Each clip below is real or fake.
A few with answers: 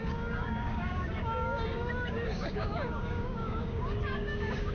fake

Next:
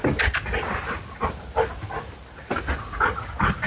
real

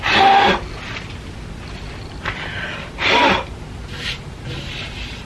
real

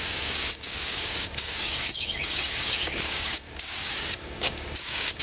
fake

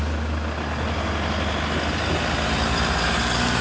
real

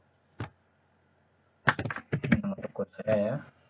real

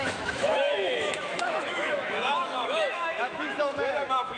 fake